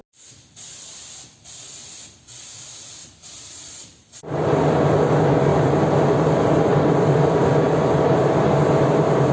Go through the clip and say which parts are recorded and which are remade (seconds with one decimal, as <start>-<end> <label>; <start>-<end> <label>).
0.0-3.0 recorded; 3.0-4.2 remade; 4.2-5.5 recorded; 5.5-7.3 remade; 7.3-9.3 recorded